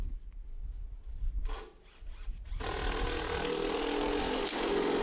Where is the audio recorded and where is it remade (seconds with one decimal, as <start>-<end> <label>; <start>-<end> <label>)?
0.0-5.0 recorded